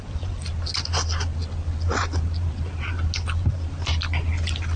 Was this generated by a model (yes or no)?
no